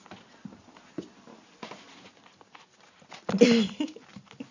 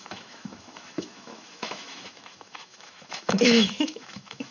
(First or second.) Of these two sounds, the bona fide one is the first